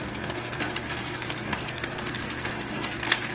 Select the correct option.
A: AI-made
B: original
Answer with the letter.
A